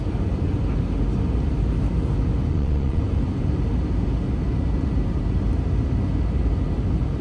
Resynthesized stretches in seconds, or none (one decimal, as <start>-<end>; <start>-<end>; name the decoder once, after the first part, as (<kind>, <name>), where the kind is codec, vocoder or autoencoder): 2.5-3.0 (vocoder, Vocos)